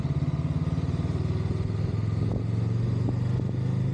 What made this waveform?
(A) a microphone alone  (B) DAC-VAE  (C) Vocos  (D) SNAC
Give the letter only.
A